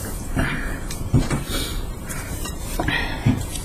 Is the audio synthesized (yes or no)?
yes